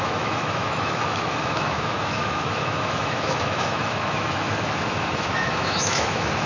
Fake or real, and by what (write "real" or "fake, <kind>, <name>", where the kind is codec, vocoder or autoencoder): fake, autoencoder, DAC-VAE